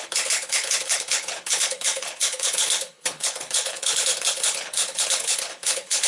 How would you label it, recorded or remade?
remade